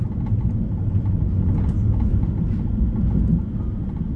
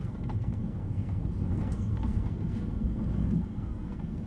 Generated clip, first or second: second